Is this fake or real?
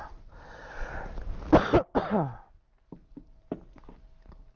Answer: real